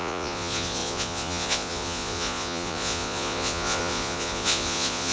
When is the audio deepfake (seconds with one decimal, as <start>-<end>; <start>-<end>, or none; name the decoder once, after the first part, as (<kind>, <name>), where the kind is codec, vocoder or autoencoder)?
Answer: 0.0-5.1 (vocoder, Vocos)